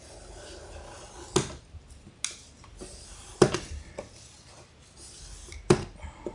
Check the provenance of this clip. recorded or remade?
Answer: recorded